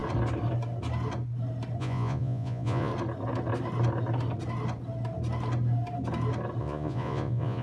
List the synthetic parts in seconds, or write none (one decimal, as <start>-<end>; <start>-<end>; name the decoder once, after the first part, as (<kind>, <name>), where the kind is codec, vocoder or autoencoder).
1.8-2.9 (vocoder, Vocos); 6.6-7.6